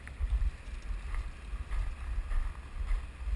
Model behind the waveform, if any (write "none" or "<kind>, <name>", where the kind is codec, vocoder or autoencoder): none